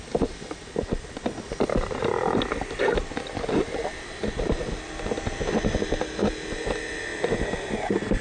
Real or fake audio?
real